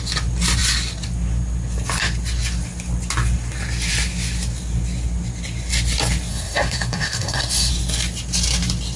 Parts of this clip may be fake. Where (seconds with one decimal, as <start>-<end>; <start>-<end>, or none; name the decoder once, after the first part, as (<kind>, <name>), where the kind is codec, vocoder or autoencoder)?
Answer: 6.3-7.7 (codec, SNAC)